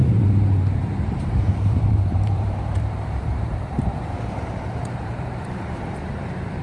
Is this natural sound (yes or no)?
no